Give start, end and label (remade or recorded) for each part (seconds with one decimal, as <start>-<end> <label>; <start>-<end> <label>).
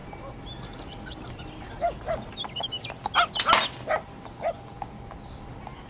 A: 0.0-5.9 recorded